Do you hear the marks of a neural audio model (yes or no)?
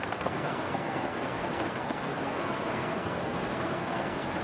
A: yes